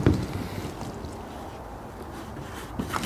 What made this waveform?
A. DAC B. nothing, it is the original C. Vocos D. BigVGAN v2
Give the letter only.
B